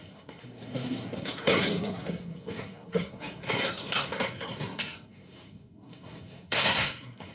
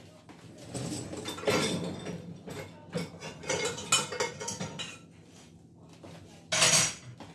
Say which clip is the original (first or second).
second